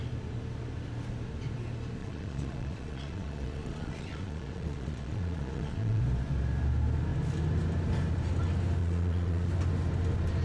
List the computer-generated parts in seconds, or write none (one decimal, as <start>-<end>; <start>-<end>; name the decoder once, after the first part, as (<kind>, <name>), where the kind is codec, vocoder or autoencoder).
2.0-6.0 (vocoder, Vocos); 8.8-9.5